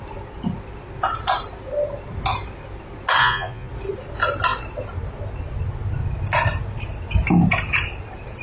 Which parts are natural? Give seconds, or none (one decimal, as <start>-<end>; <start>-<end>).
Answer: 0.0-3.2; 3.7-8.4